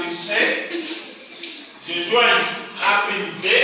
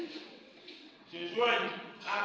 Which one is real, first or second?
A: first